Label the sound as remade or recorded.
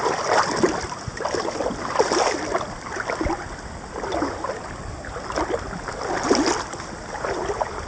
recorded